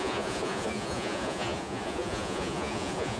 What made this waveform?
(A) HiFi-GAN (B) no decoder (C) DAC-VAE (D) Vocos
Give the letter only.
D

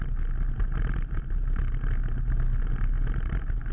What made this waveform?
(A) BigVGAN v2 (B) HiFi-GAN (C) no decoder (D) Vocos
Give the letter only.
C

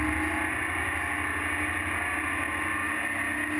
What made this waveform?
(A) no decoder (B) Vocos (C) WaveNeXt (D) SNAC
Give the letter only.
A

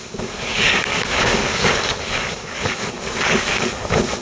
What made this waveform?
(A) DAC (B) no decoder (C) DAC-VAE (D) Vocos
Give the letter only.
A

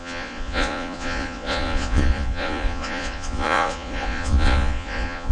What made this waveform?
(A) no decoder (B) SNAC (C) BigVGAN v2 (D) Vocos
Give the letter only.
D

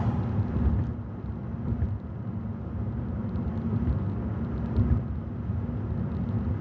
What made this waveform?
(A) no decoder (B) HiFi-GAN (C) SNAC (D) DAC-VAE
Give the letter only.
A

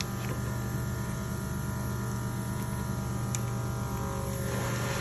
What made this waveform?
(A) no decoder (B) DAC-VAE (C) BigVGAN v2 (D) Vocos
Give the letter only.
A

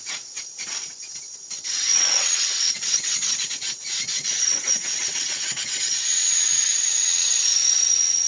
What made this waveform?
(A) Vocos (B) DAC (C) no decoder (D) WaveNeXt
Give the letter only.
D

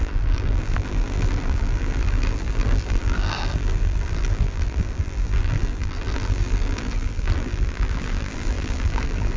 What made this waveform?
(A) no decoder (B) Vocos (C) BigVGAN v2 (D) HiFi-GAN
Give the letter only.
C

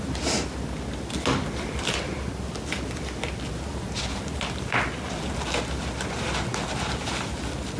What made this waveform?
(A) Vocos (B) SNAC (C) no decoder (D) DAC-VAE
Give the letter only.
C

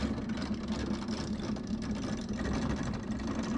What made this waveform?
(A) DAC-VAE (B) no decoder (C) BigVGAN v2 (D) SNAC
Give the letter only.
B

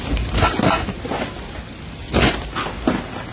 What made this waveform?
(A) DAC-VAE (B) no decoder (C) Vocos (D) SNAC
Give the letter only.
B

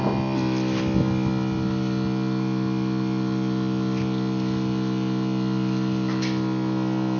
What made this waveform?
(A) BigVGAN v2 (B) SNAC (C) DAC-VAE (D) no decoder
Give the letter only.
D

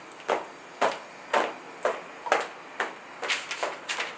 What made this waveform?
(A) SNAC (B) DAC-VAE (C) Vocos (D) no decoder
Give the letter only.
D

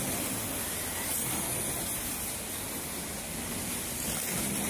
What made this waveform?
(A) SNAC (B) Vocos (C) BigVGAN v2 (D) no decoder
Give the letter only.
D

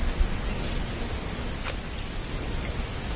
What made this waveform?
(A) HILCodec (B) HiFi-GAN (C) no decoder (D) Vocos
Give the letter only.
C